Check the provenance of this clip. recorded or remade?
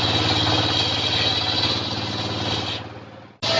recorded